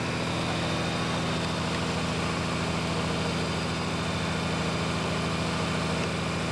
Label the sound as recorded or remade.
recorded